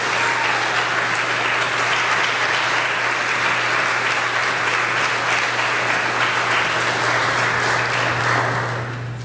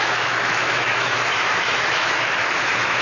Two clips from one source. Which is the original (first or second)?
first